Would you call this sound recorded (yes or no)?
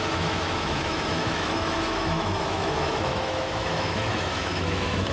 no